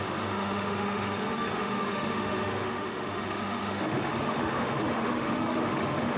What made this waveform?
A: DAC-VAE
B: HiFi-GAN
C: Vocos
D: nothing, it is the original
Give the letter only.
A